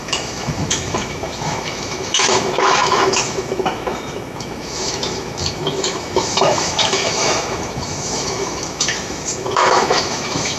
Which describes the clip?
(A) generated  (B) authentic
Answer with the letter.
A